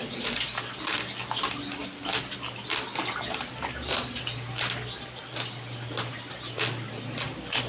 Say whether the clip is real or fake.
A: real